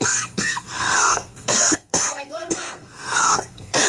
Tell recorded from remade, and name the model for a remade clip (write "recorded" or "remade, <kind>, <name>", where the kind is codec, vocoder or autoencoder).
remade, codec, SNAC